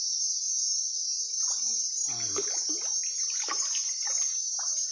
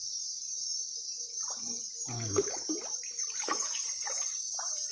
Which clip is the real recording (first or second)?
first